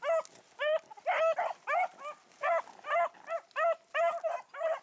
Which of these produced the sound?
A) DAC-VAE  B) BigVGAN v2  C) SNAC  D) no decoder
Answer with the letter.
D